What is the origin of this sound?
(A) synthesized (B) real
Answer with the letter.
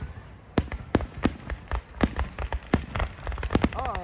B